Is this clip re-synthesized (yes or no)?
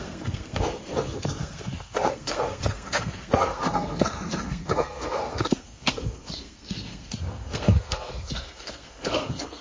yes